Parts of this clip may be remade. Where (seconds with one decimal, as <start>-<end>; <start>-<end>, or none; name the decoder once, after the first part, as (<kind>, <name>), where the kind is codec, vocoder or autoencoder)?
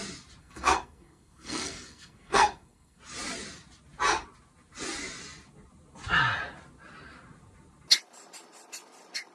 0.4-3.0 (codec, SNAC)